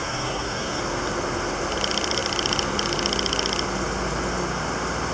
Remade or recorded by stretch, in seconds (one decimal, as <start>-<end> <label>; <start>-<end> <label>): 0.0-0.8 remade; 0.8-5.1 recorded